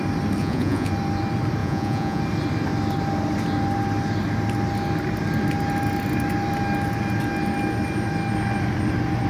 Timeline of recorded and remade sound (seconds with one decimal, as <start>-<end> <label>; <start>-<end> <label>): 0.0-0.4 recorded; 0.4-0.9 remade; 0.9-1.6 recorded; 1.6-2.2 remade; 2.2-9.3 recorded